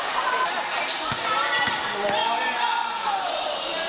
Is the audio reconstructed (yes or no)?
yes